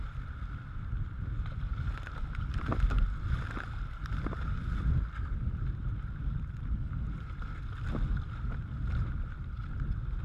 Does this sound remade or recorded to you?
recorded